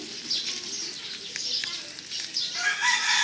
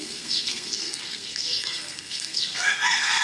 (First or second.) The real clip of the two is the first